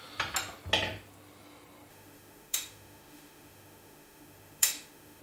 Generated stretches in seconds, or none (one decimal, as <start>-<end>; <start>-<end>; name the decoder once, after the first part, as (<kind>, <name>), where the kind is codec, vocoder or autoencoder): 1.9-5.2 (autoencoder, DAC-VAE)